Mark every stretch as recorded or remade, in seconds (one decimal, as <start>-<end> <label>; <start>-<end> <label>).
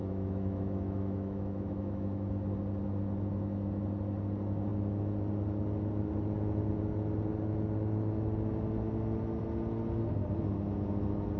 0.0-2.3 remade; 2.3-11.4 recorded